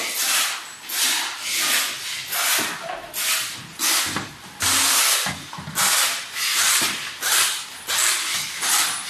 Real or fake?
real